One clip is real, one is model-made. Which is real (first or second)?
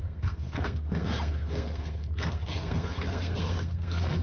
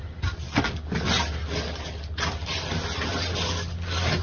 second